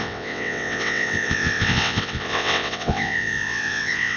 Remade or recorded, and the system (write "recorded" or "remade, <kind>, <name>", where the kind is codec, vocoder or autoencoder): remade, vocoder, WaveNeXt